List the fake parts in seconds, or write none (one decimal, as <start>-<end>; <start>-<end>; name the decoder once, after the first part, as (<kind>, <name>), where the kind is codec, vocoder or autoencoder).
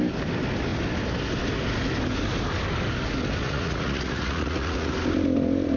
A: 3.4-4.9 (vocoder, Vocos)